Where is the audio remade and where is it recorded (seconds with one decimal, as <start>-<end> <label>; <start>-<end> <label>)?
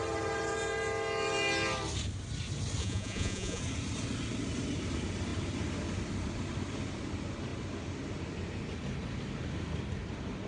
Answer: 0.0-2.8 recorded; 2.8-3.6 remade; 3.6-10.5 recorded